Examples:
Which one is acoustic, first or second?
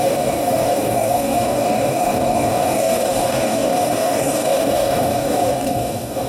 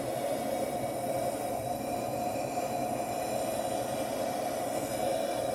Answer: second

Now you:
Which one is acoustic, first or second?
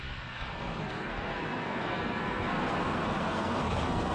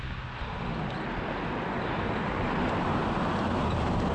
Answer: second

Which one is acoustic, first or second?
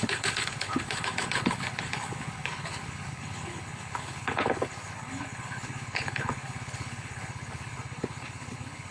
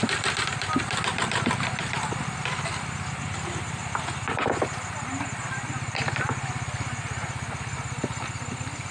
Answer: second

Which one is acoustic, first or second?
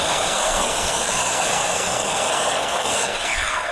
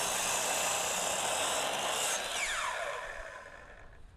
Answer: second